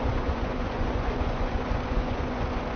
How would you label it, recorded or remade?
remade